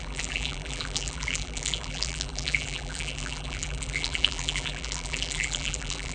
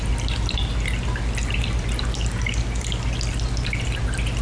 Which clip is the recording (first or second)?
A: second